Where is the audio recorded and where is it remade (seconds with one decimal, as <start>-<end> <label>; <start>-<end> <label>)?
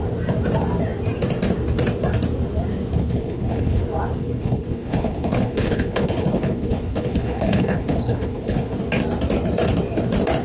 0.0-3.0 recorded; 3.0-3.8 remade; 3.8-4.2 recorded; 4.2-8.8 remade; 8.8-10.4 recorded